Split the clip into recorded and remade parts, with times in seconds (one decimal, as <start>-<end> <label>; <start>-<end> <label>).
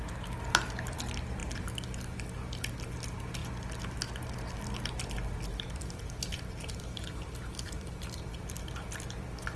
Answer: 0.0-5.5 recorded; 5.5-8.5 remade; 8.5-9.6 recorded